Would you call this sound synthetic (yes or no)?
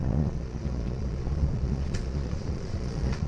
yes